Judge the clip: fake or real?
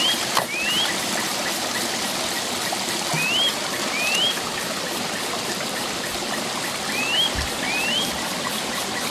real